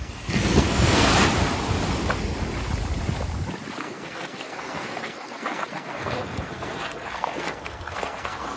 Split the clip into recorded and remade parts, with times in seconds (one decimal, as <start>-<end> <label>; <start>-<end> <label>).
0.0-1.1 remade; 1.1-3.8 recorded; 3.8-8.6 remade